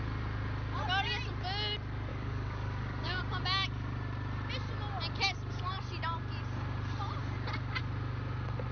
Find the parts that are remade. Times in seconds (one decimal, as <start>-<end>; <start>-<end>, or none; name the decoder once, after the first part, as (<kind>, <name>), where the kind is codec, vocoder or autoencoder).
2.1-3.2 (codec, DAC)